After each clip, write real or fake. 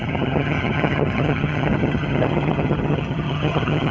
fake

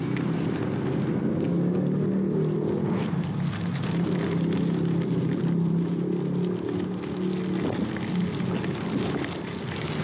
real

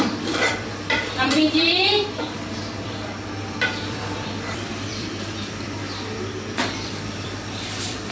fake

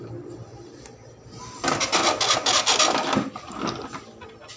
real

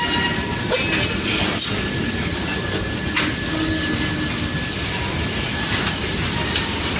real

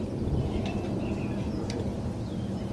fake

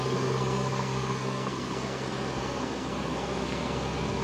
fake